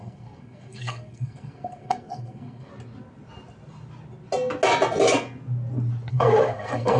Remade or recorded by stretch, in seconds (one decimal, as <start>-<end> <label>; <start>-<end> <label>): 0.0-2.7 remade; 2.7-6.1 recorded; 6.1-7.0 remade